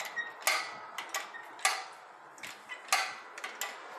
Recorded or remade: recorded